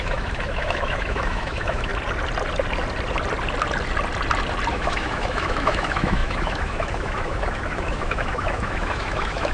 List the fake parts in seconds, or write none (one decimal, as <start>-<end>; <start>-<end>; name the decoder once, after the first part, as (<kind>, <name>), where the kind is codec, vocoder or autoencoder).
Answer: 0.0-1.9 (autoencoder, DAC-VAE); 4.7-9.5